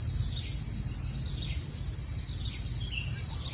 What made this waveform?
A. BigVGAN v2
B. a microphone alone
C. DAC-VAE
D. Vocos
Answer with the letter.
B